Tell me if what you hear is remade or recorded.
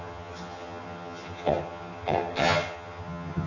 remade